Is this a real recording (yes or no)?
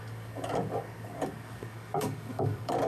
no